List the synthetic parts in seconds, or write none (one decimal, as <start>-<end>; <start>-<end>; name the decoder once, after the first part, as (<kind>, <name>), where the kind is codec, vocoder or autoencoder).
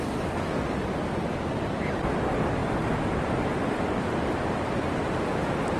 none